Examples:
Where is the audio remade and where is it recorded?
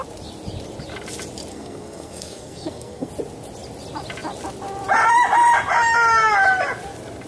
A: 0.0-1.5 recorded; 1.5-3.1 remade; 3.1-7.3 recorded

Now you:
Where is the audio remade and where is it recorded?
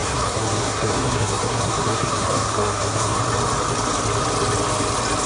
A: 0.0-3.2 remade; 3.2-5.3 recorded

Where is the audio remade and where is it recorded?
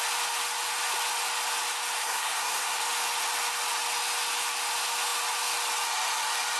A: 0.0-2.0 recorded; 2.0-2.8 remade; 2.8-6.6 recorded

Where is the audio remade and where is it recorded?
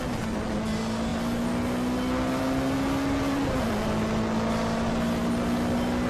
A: 0.0-6.1 recorded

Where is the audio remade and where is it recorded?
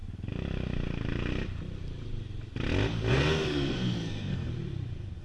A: 0.0-3.1 recorded; 3.1-4.5 remade; 4.5-5.2 recorded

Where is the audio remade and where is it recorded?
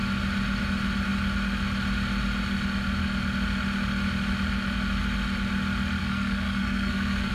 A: 0.0-6.0 recorded; 6.0-7.3 remade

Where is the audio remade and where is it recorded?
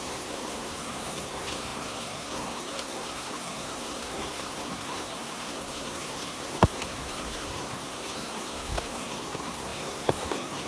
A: 0.0-10.7 remade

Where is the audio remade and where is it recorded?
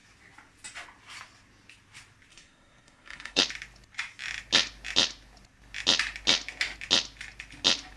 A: 0.0-2.3 recorded; 2.3-3.4 remade; 3.4-8.0 recorded